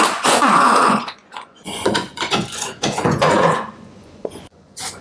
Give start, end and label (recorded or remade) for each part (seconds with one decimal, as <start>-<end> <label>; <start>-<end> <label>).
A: 0.0-5.0 remade